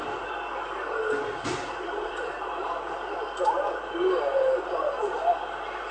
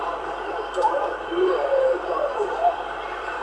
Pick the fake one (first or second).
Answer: second